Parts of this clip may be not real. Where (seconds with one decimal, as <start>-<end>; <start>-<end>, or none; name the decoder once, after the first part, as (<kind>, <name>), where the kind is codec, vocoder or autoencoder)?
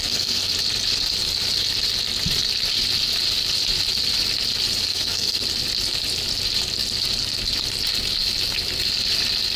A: 0.0-0.5 (codec, SNAC); 4.9-5.4